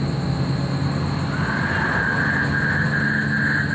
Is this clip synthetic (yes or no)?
no